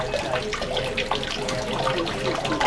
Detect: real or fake real